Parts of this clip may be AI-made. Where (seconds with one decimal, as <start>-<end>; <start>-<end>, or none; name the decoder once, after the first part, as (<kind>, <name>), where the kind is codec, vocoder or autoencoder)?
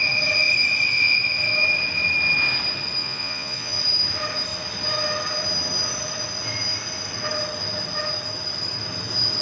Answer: 3.0-3.8 (vocoder, Vocos)